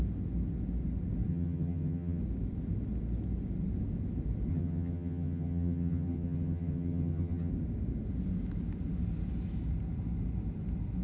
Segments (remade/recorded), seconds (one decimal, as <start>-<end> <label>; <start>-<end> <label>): 0.0-1.3 recorded; 1.3-2.2 remade; 2.2-4.5 recorded; 4.5-7.5 remade; 7.5-11.0 recorded